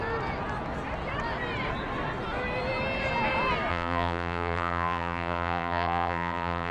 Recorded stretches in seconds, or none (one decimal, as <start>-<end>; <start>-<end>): 0.0-3.7